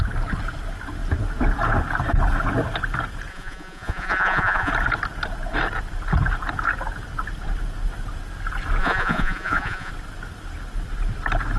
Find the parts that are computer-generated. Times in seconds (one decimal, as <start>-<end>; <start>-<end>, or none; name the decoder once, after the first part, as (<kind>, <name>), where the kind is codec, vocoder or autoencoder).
3.3-4.7 (vocoder, Vocos); 8.8-9.9